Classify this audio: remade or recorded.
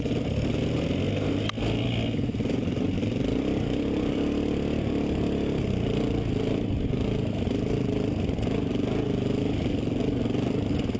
recorded